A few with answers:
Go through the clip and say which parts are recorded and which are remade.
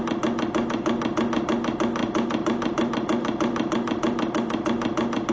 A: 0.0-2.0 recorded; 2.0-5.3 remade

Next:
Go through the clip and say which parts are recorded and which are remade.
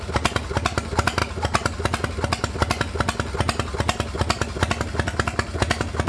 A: 0.0-6.1 recorded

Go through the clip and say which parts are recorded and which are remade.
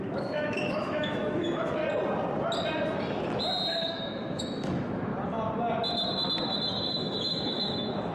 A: 0.0-1.8 remade; 1.8-3.7 recorded; 3.7-5.1 remade; 5.1-6.9 recorded; 6.9-8.1 remade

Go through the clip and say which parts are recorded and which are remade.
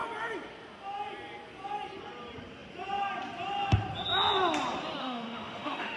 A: 0.0-5.0 recorded; 5.0-6.0 remade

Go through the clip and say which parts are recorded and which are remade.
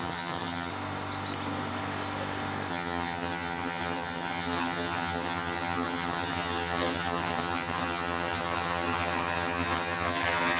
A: 0.0-0.7 remade; 0.7-2.7 recorded; 2.7-10.6 remade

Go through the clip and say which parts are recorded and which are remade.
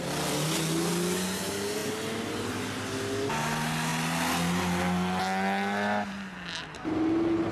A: 0.0-7.5 recorded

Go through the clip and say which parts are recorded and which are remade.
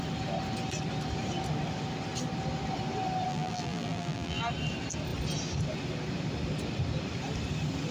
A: 0.0-3.3 recorded; 3.3-4.4 remade; 4.4-7.9 recorded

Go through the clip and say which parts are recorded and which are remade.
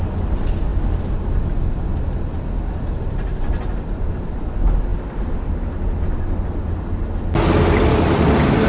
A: 0.0-8.7 recorded